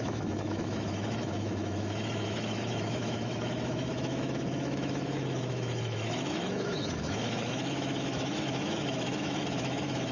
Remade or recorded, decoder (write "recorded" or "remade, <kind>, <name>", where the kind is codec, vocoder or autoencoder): remade, autoencoder, DAC-VAE